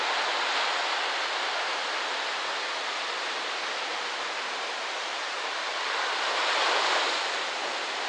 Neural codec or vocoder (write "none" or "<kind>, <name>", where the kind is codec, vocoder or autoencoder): none